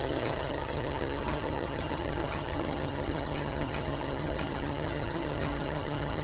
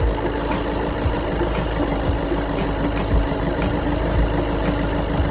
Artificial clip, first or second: first